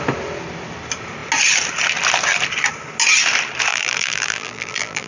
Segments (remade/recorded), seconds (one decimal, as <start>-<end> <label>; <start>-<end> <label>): 0.0-3.7 recorded; 3.7-5.1 remade